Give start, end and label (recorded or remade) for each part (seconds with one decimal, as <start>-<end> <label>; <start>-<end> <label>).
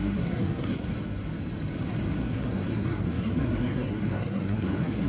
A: 0.0-0.9 remade; 0.9-2.2 recorded; 2.2-5.1 remade